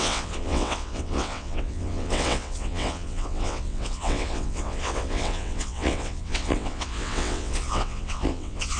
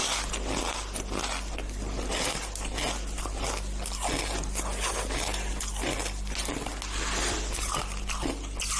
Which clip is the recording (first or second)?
second